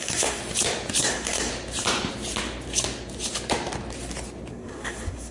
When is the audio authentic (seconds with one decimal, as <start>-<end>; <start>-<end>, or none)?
0.4-1.0; 1.5-4.5